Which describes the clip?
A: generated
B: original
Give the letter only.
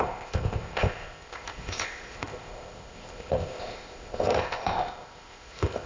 A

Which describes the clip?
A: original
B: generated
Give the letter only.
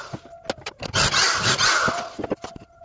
A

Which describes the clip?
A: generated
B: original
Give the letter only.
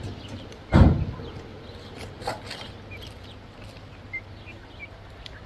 B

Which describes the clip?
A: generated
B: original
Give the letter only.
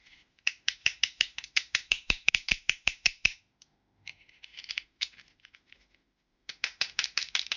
A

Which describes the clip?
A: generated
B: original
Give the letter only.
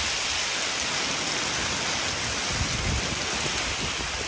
B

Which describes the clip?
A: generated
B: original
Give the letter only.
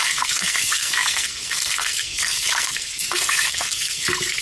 A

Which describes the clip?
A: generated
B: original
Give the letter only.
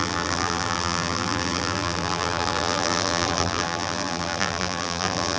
A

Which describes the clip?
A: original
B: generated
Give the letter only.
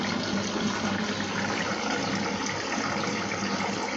A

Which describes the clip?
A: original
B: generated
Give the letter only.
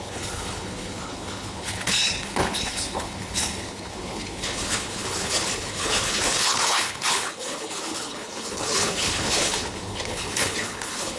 B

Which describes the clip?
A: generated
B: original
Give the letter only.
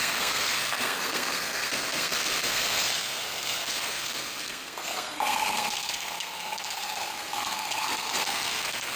A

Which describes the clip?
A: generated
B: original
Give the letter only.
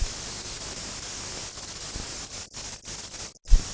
B